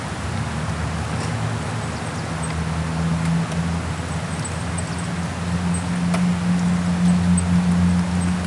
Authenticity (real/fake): real